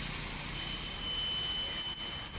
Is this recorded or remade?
recorded